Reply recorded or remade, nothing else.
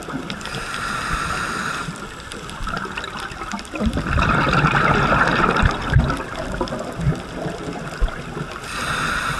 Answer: recorded